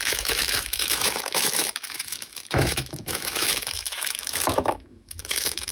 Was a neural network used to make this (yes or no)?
yes